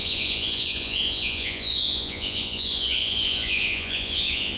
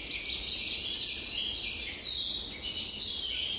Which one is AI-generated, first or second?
first